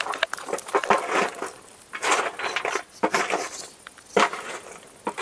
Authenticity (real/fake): real